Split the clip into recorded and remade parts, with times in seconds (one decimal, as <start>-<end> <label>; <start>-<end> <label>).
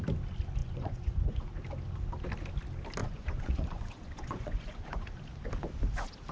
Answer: 0.0-0.6 recorded; 0.6-1.4 remade; 1.4-3.0 recorded; 3.0-5.1 remade; 5.1-6.3 recorded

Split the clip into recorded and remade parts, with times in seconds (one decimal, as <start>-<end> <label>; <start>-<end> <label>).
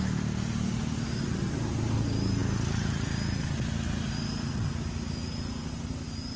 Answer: 0.0-6.4 recorded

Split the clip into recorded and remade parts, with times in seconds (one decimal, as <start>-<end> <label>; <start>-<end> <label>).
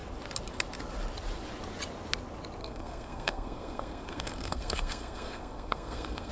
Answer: 0.0-2.6 recorded; 2.6-6.3 remade